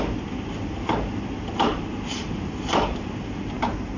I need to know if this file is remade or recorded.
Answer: recorded